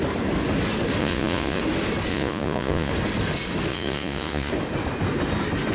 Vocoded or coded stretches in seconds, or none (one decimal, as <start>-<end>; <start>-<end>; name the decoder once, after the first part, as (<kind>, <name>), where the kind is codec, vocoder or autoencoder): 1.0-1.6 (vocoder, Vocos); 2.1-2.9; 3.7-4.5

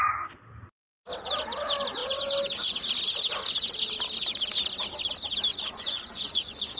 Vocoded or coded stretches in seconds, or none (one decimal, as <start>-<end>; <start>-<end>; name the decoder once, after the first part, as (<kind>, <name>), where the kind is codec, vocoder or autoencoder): 5.5-6.8 (vocoder, Vocos)

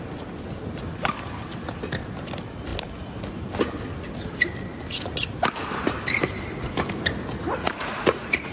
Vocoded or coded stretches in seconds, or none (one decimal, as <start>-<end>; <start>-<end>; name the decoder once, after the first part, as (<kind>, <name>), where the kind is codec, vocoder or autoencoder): 7.6-8.5 (vocoder, Vocos)

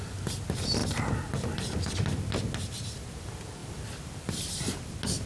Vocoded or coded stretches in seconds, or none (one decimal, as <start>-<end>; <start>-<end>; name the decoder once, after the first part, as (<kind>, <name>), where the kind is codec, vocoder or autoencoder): none

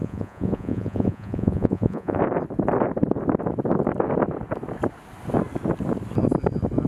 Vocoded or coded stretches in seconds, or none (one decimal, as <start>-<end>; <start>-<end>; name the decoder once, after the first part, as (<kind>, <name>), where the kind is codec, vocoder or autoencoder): 0.0-2.2 (vocoder, Vocos)